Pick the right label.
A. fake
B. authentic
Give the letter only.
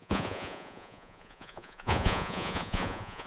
A